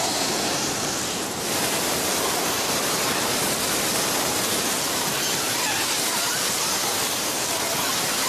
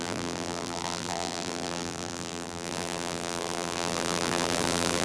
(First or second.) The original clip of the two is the first